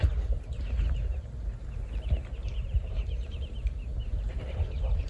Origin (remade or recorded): recorded